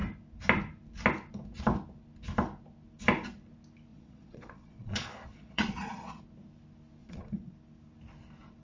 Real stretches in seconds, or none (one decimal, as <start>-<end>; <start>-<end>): 0.0-3.9; 6.2-7.0; 7.5-8.6